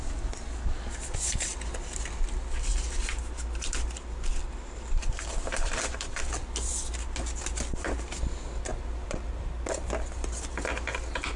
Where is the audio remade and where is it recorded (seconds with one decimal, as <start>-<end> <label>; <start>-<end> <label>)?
0.0-4.4 recorded; 4.4-6.2 remade; 6.2-8.7 recorded; 8.7-9.3 remade; 9.3-11.4 recorded